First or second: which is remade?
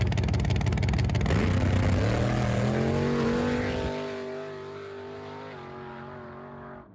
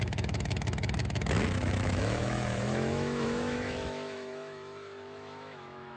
second